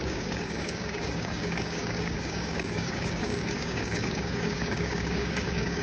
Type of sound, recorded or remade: remade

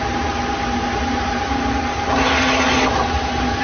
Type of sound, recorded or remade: recorded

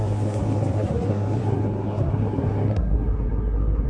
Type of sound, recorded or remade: remade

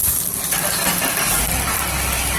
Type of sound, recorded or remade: recorded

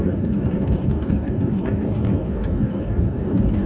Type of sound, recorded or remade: remade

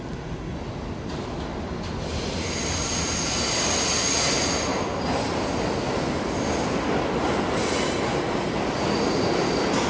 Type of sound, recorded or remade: recorded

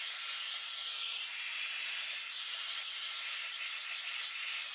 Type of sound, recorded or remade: recorded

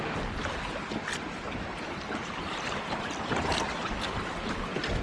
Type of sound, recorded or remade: recorded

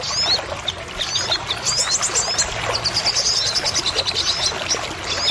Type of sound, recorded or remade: recorded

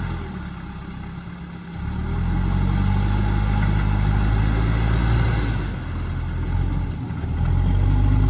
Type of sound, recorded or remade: recorded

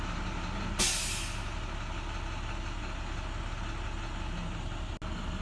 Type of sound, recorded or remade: recorded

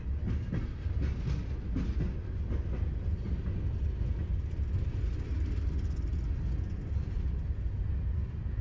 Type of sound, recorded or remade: recorded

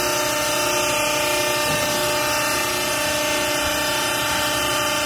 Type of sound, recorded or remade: recorded